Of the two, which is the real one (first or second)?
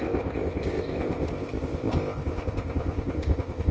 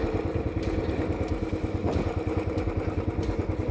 second